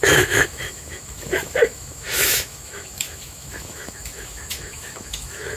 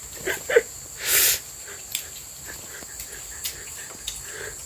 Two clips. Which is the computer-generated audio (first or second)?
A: first